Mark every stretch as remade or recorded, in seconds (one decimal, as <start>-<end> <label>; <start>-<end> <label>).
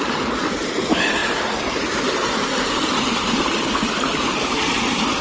0.0-5.2 recorded